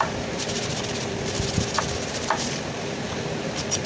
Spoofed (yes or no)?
yes